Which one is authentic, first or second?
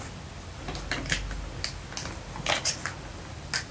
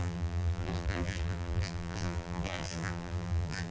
first